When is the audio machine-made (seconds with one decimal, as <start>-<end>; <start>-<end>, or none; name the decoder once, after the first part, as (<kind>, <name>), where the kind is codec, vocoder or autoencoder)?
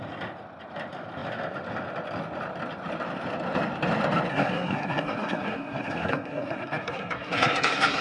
4.3-8.0 (codec, SNAC)